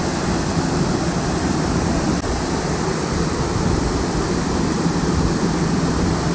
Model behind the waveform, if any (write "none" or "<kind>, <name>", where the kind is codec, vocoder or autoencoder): none